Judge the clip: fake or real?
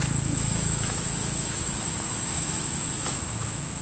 fake